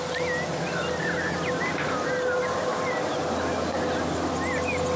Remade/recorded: recorded